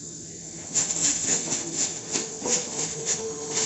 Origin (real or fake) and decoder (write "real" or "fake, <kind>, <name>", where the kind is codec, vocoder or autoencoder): fake, autoencoder, DAC-VAE